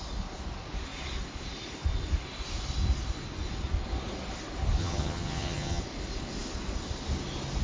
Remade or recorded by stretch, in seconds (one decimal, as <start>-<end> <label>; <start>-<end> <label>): 0.0-4.8 recorded; 4.8-5.8 remade; 5.8-7.6 recorded

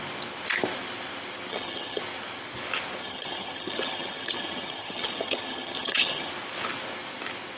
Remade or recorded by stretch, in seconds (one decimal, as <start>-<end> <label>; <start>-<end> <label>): 0.0-1.5 recorded; 1.5-2.0 remade; 2.0-3.0 recorded; 3.0-6.3 remade; 6.3-7.6 recorded

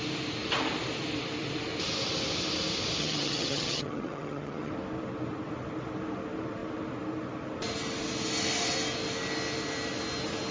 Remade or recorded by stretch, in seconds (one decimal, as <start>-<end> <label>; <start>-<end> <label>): 0.0-3.0 recorded; 3.0-4.7 remade; 4.7-10.5 recorded

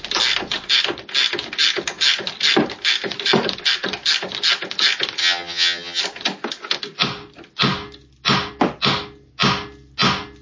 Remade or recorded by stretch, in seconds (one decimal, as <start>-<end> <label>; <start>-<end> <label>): 0.0-5.2 recorded; 5.2-6.0 remade; 6.0-10.4 recorded

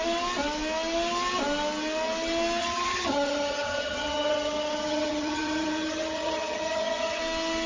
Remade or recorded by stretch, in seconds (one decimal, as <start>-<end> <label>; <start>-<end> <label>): 0.0-2.6 recorded; 2.6-7.2 remade; 7.2-7.7 recorded

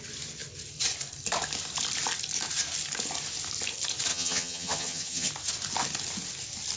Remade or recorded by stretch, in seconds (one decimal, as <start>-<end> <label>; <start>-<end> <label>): 0.0-4.1 recorded; 4.1-5.3 remade; 5.3-6.8 recorded

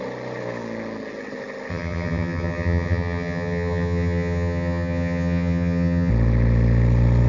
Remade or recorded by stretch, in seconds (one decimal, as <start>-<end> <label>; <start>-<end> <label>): 0.0-1.7 recorded; 1.7-6.1 remade; 6.1-7.3 recorded